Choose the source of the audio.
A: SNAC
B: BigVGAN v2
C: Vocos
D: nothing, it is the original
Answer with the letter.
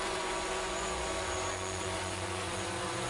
C